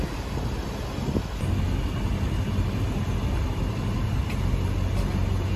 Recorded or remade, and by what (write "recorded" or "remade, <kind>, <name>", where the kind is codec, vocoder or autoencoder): recorded